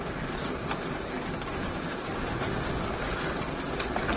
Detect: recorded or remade recorded